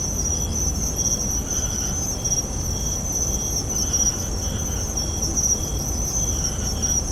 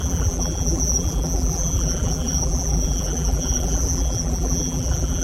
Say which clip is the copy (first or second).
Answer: second